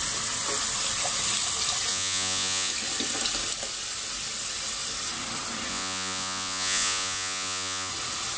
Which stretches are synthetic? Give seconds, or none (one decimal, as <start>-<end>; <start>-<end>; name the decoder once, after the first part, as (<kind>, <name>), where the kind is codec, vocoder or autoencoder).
1.9-2.7 (vocoder, Vocos); 5.7-7.9